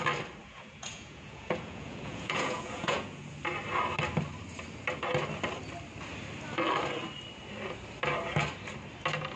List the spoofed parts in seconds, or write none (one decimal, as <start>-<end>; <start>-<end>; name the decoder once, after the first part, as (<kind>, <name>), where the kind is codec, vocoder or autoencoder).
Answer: 0.4-3.3 (vocoder, Vocos)